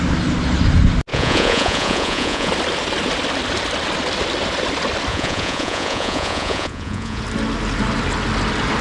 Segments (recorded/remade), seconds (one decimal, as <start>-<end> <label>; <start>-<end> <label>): 0.0-1.1 recorded; 1.1-2.5 remade; 2.5-5.1 recorded; 5.1-7.2 remade; 7.2-8.8 recorded